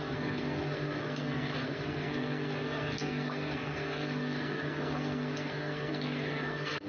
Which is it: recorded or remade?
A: remade